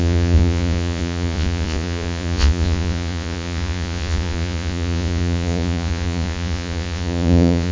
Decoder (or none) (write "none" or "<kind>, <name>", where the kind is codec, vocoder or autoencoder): vocoder, Vocos